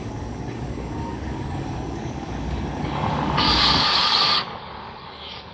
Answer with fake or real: fake